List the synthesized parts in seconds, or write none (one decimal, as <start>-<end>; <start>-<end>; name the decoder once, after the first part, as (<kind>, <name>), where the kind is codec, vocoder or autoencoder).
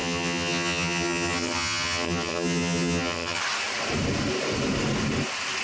0.0-3.4 (vocoder, HiFi-GAN)